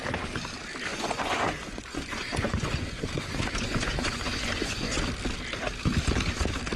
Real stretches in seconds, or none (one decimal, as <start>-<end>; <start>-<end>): 0.0-0.9; 5.0-6.8